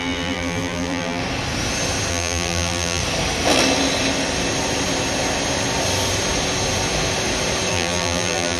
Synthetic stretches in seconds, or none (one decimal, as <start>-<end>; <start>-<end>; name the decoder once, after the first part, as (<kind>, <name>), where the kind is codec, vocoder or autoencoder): 0.0-1.2 (vocoder, BigVGAN v2); 2.1-3.0; 7.7-8.6